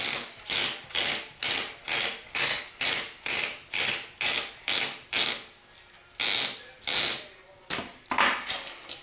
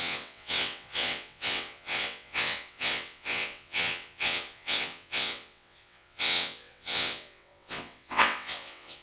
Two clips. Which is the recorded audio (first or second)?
first